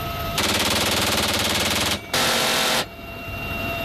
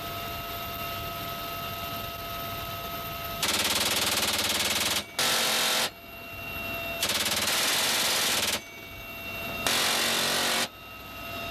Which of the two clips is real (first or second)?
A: second